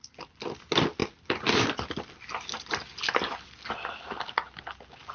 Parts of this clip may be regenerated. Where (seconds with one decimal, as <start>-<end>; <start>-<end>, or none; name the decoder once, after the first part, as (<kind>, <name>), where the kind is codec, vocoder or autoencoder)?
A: 1.0-1.8 (vocoder, BigVGAN v2)